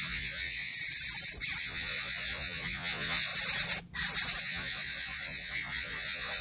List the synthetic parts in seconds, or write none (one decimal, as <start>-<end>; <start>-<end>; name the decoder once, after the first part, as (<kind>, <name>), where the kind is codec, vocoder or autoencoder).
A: 0.0-0.7 (vocoder, Vocos); 1.6-3.3; 4.4-6.4